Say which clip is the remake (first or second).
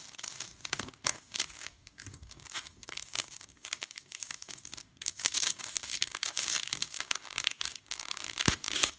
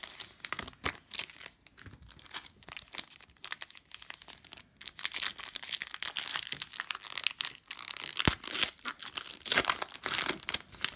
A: first